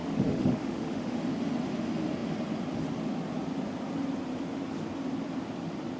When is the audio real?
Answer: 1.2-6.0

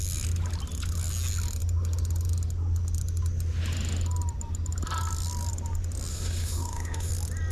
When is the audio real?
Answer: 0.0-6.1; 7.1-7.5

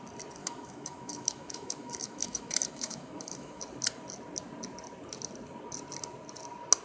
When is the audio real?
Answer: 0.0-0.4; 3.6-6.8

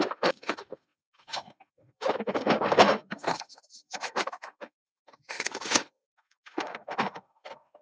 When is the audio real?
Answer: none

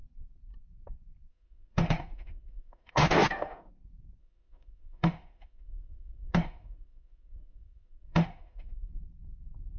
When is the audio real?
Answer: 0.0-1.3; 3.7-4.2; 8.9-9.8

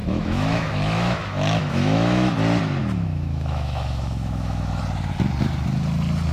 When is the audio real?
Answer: 2.3-2.8; 4.8-6.3